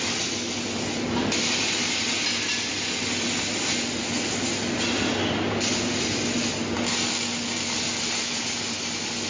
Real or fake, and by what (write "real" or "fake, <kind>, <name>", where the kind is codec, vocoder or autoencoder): real